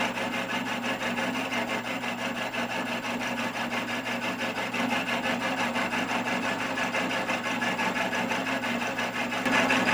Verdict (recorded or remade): recorded